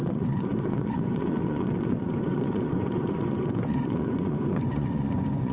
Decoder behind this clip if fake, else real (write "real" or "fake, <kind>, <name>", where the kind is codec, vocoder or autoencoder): fake, vocoder, Vocos